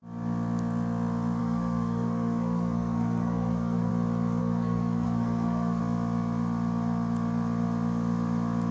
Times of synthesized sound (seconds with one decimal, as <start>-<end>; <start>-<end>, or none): 1.4-3.9; 4.4-5.8

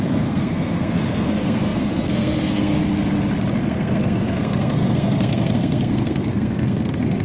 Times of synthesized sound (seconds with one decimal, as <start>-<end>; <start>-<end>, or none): 0.0-2.8; 3.6-7.2

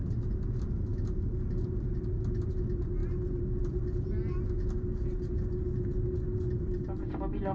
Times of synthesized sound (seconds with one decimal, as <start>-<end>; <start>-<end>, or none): none